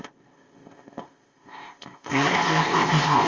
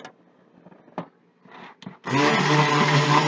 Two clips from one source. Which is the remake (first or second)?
first